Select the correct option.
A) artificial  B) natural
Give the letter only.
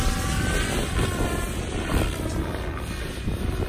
B